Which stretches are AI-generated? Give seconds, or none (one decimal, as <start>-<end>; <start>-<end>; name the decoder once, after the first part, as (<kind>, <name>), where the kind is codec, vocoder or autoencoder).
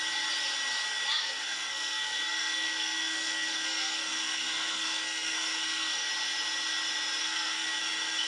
1.2-6.1 (codec, SNAC); 7.2-7.8